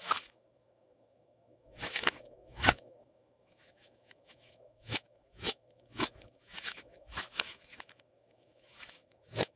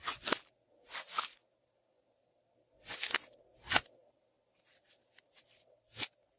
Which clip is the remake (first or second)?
first